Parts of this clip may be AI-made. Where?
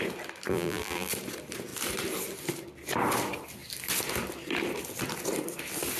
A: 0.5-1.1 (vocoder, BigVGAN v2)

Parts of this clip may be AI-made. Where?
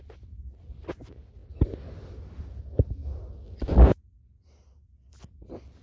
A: none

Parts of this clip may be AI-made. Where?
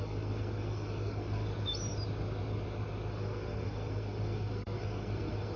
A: 0.0-1.5 (codec, SNAC); 3.1-5.6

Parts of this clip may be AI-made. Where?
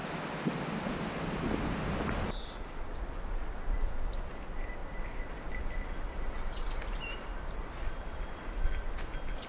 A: none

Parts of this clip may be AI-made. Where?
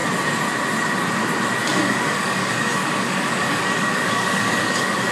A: 1.6-5.1 (codec, DAC)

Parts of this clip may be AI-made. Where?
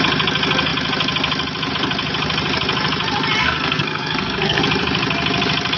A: 3.4-4.6 (codec, SNAC)